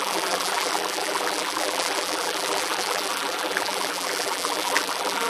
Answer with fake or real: fake